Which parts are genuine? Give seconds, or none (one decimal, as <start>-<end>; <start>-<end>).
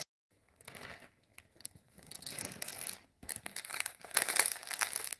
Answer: none